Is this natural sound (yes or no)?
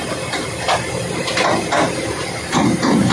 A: yes